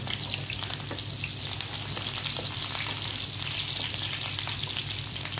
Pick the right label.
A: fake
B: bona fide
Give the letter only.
B